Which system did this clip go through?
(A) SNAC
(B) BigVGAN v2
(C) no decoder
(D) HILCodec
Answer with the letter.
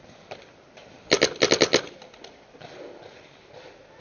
C